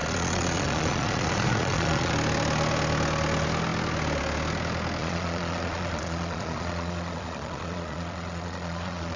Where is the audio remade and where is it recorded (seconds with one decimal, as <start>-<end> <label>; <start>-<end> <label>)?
0.0-2.1 remade; 2.1-5.0 recorded; 5.0-9.2 remade